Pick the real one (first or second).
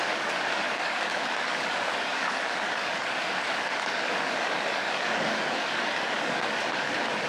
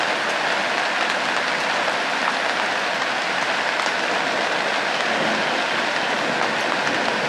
second